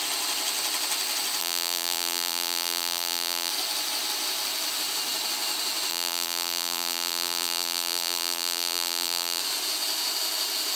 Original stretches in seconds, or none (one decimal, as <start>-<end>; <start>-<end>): 0.0-1.4; 3.5-5.9; 9.4-10.8